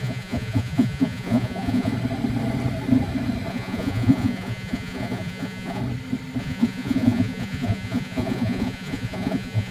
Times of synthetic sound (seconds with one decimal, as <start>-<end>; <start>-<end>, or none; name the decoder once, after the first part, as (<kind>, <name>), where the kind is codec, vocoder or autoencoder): 0.0-1.9 (vocoder, Vocos); 3.5-5.8; 6.4-9.7